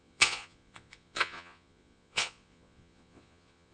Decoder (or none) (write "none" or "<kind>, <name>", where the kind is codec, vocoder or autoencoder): vocoder, Vocos